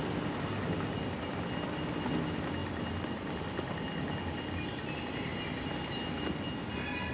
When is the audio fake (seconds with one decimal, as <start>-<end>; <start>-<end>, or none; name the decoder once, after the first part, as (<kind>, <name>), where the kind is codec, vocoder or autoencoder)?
none